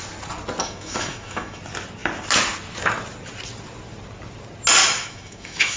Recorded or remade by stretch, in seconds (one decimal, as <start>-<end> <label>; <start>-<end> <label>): 0.0-0.6 recorded; 0.6-1.6 remade; 1.6-4.8 recorded; 4.8-5.8 remade